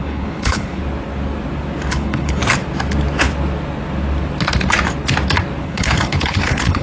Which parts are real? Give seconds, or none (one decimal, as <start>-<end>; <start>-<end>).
0.8-1.9; 2.4-5.6